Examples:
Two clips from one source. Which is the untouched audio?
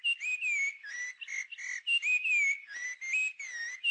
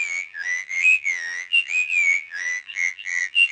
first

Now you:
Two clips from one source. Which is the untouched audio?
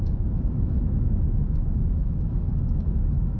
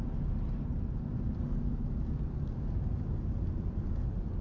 second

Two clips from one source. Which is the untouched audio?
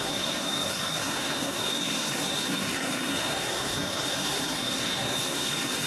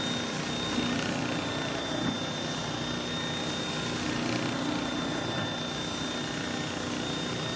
second